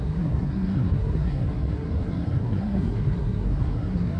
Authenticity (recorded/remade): remade